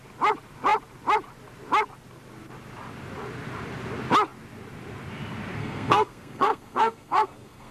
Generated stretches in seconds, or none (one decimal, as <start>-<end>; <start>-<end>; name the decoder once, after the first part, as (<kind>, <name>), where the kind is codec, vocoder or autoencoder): 5.6-7.7 (codec, SNAC)